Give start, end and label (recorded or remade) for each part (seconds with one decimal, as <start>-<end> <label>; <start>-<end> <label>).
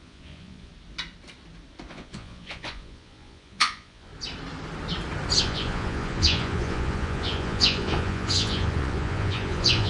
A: 0.0-0.7 remade; 0.7-1.9 recorded; 1.9-4.1 remade; 4.1-5.4 recorded; 5.4-9.9 remade